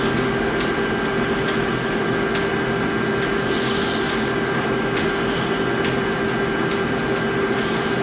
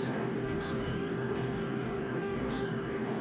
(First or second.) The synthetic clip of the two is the second